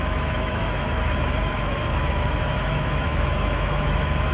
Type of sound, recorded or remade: remade